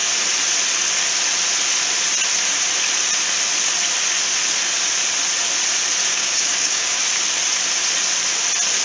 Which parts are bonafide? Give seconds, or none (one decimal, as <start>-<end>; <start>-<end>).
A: 0.0-6.1; 7.0-8.8